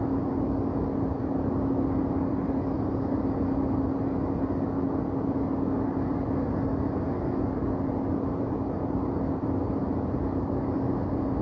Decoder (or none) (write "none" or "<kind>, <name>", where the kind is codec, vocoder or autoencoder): none